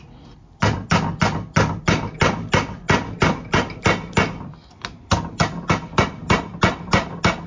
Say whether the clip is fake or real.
real